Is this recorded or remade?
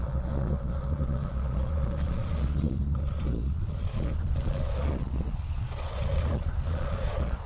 remade